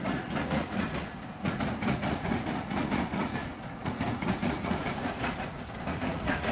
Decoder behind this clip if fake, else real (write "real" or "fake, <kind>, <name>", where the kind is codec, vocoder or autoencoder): fake, vocoder, Vocos